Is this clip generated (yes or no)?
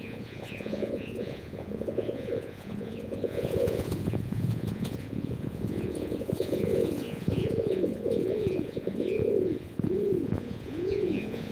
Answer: yes